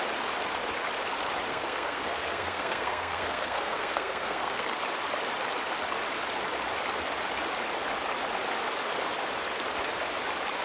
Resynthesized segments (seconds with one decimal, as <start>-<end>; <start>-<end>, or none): 1.5-4.8

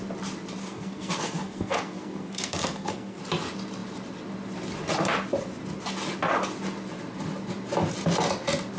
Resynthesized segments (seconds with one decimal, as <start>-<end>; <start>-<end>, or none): 0.6-3.2

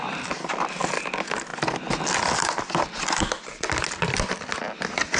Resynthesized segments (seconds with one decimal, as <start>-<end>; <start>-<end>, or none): none

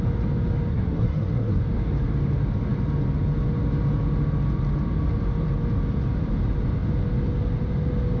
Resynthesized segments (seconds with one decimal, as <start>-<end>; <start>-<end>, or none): 0.7-1.6

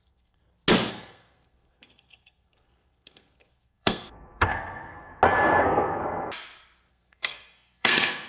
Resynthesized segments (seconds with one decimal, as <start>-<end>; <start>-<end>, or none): 0.0-0.4; 0.9-5.1; 5.6-6.0; 6.9-8.3

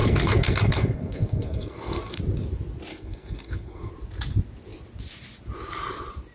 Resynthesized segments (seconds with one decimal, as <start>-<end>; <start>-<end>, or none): 0.0-2.2; 2.9-3.9

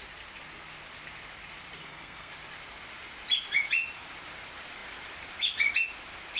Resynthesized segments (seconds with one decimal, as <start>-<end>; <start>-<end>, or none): 1.8-2.3